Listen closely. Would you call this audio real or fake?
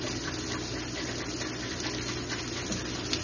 real